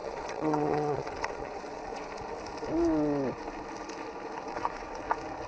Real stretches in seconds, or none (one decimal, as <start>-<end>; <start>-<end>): 2.1-4.5; 5.0-5.5